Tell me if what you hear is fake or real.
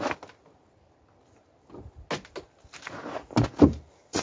real